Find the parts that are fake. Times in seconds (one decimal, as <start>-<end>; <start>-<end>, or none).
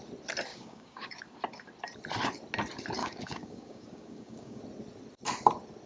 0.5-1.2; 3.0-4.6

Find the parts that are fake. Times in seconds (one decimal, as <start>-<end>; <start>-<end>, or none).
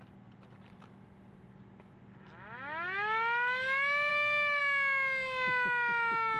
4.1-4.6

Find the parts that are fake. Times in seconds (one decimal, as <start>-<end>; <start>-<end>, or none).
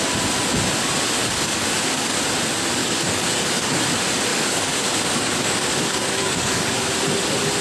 1.2-2.2; 2.8-3.8; 4.3-6.9